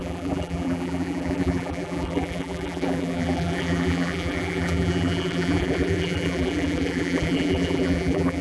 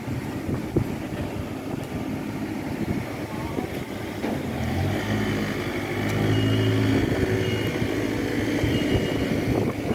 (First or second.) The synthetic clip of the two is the first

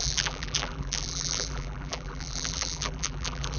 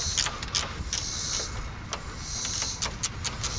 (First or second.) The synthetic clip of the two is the first